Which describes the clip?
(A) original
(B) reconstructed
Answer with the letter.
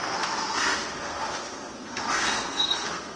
B